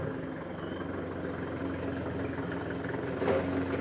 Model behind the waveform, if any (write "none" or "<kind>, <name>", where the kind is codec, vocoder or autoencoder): none